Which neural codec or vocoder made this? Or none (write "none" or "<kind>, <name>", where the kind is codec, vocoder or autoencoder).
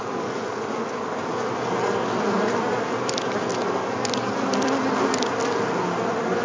none